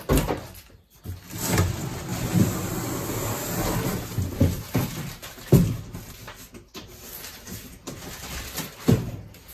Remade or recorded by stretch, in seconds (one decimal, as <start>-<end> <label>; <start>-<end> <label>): 0.0-9.5 recorded